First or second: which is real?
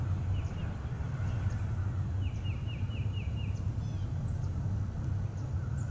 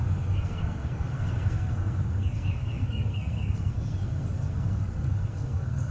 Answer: first